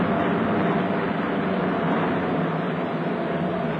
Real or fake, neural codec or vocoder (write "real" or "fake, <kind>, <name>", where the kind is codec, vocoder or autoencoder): real